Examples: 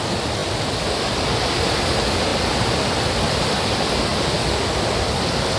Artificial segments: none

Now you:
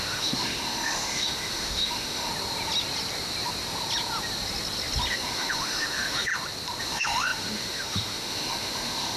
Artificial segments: 0.0-2.3 (autoencoder, DAC-VAE); 5.1-6.3; 6.8-9.2

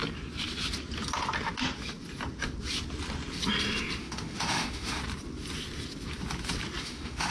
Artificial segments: 4.0-5.0 (autoencoder, DAC-VAE); 6.8-7.3

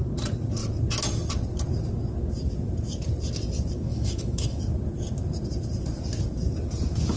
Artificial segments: 3.9-4.6 (autoencoder, DAC-VAE)

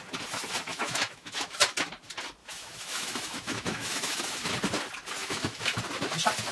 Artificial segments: 0.7-1.6 (autoencoder, DAC-VAE); 2.4-4.5; 5.2-5.8